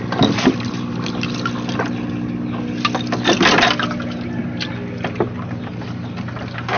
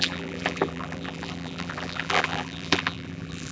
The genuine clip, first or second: first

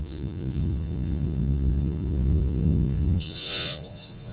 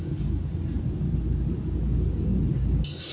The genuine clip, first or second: second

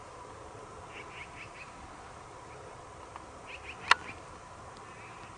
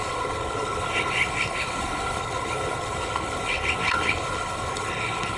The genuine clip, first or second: first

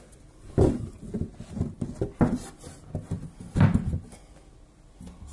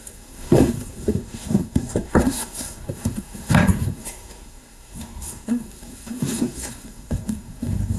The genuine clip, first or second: first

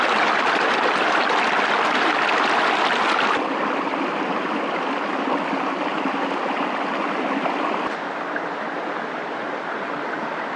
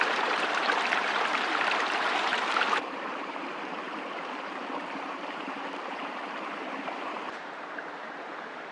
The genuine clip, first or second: first